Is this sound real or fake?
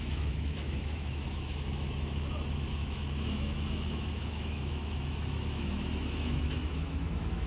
fake